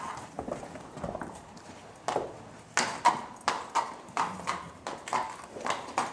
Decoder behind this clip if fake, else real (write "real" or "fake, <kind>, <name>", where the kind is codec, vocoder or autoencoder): real